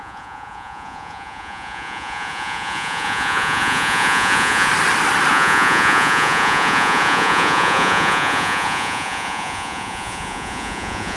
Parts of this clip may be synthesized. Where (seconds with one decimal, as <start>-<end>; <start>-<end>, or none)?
0.0-4.7; 5.3-11.2